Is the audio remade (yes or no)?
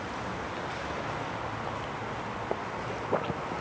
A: no